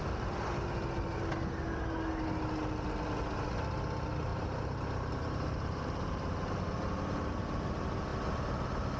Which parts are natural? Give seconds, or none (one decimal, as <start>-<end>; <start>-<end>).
0.0-4.3; 6.6-9.0